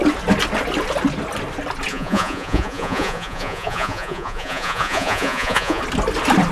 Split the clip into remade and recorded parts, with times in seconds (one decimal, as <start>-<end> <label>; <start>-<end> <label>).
0.0-1.9 recorded; 1.9-5.8 remade; 5.8-6.5 recorded